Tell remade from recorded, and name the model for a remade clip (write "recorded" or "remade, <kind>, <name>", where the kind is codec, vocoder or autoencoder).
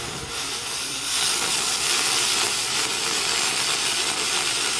recorded